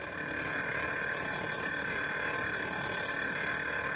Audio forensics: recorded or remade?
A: recorded